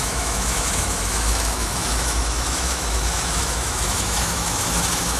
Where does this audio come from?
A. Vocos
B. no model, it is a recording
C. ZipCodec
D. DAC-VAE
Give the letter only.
D